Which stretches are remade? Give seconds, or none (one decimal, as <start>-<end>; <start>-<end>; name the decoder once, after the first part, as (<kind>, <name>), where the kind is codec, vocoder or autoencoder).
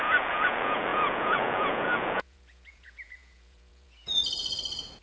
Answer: 0.0-4.2 (vocoder, Vocos)